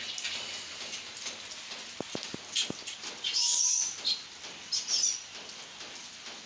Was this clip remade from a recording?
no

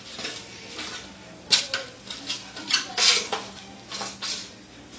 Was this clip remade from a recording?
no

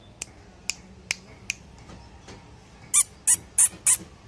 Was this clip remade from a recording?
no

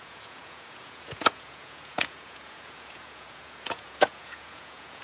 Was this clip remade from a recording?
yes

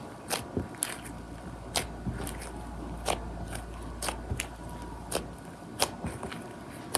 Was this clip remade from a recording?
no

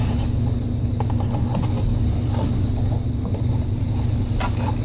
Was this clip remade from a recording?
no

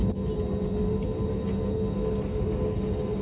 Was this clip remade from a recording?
no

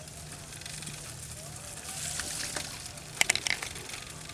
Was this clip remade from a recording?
no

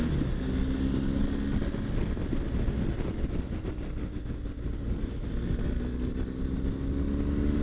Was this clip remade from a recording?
no